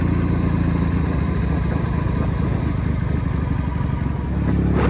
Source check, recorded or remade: recorded